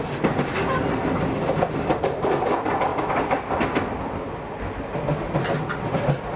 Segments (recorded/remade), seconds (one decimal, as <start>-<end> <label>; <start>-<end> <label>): 0.0-6.4 recorded